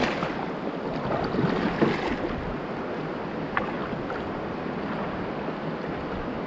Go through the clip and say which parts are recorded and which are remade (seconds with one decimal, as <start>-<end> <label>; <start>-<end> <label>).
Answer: 0.0-6.5 recorded